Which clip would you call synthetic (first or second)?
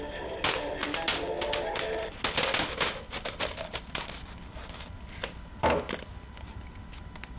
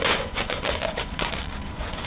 second